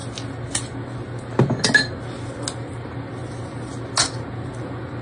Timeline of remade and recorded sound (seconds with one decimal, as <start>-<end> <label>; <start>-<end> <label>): 0.0-5.0 recorded